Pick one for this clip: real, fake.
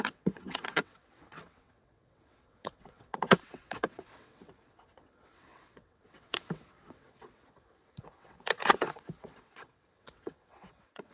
fake